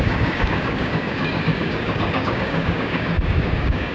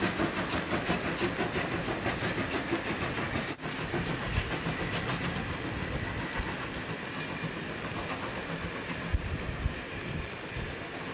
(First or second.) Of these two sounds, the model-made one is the first